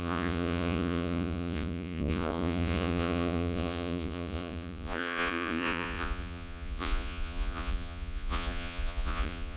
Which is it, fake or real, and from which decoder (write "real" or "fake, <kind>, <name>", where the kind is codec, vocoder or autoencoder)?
fake, vocoder, Vocos